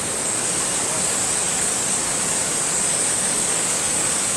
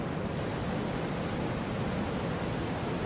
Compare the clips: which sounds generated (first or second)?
first